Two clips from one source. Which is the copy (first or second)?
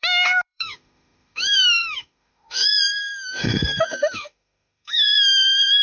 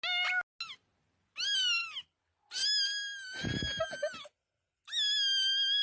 first